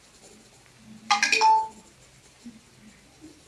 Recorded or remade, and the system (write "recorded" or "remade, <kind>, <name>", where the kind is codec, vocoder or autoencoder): recorded